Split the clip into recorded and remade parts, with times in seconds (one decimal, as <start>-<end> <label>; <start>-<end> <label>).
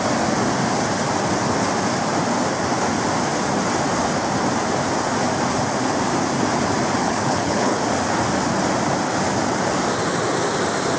0.0-7.0 recorded; 7.0-7.8 remade; 7.8-11.0 recorded